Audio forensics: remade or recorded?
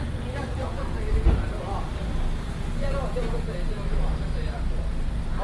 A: recorded